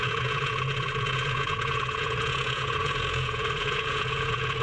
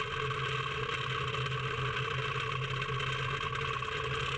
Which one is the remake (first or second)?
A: first